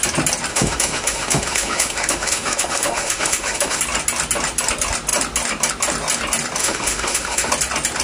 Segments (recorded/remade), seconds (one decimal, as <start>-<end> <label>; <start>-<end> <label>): 0.0-0.5 recorded; 0.5-3.8 remade; 3.8-6.6 recorded; 6.6-7.5 remade; 7.5-8.0 recorded